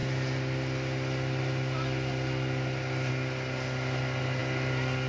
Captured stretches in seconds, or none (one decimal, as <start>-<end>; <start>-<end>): 0.0-5.1